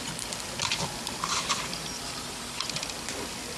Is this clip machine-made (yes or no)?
no